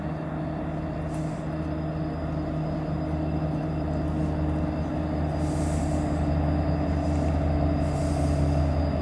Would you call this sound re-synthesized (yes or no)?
no